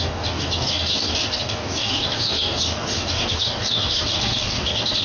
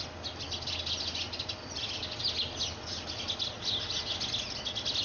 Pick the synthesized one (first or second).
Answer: first